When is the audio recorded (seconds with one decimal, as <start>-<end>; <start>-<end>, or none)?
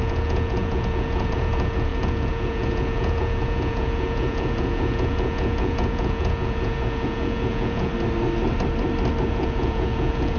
7.9-9.2